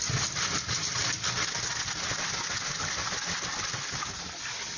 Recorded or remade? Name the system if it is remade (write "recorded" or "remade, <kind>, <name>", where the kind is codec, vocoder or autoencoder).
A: recorded